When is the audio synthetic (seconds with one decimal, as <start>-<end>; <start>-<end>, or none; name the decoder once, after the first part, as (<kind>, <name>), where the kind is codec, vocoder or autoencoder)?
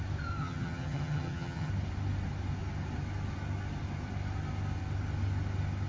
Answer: 0.4-1.7 (vocoder, HiFi-GAN)